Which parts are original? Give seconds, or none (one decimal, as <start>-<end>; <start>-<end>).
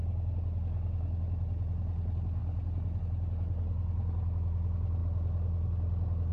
0.0-6.3